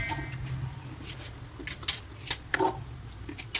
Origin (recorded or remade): recorded